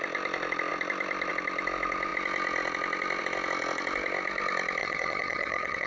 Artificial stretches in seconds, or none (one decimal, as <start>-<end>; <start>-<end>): 4.8-5.9